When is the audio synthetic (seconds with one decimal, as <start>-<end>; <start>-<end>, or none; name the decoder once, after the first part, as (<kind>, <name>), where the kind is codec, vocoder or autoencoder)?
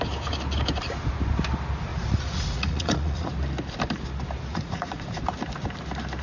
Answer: 1.9-3.3 (vocoder, Vocos); 4.5-5.2